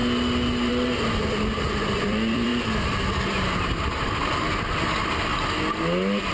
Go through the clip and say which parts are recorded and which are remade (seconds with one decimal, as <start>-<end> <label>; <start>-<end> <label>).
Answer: 0.0-0.7 recorded; 0.7-5.3 remade; 5.3-6.3 recorded